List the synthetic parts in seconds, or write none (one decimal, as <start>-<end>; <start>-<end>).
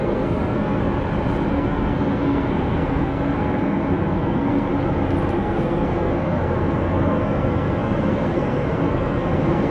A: 0.0-0.8; 1.5-4.7; 5.4-9.7